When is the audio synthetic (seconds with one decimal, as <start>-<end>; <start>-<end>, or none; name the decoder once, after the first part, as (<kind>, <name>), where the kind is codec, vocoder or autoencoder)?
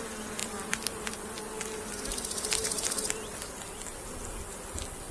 0.4-3.5 (vocoder, BigVGAN v2)